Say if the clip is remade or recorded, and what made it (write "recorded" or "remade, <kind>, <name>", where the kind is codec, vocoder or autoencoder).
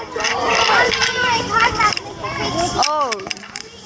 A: recorded